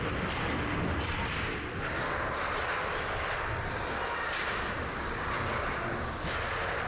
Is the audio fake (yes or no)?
no